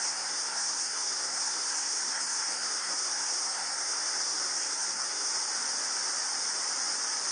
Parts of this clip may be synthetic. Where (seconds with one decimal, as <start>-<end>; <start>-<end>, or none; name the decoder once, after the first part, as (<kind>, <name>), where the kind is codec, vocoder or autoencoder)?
0.0-5.3 (codec, SNAC)